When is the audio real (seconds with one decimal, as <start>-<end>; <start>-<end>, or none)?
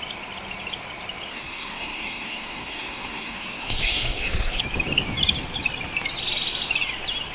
0.0-1.3; 4.6-7.3